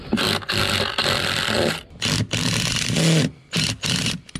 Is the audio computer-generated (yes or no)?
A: no